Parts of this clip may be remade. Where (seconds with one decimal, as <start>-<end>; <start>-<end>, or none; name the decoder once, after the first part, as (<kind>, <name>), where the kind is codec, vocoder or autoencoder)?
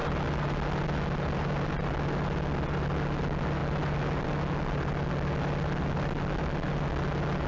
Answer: none